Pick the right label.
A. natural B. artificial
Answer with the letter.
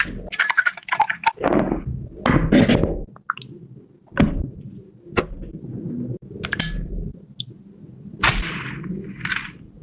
A